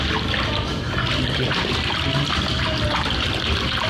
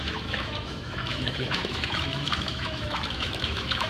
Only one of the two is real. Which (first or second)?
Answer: first